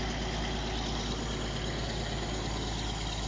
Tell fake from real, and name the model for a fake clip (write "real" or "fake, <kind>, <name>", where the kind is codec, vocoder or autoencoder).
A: real